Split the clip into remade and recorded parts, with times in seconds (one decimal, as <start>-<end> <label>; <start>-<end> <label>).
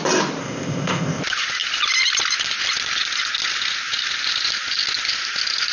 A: 0.0-0.4 recorded; 0.4-1.2 remade; 1.2-5.7 recorded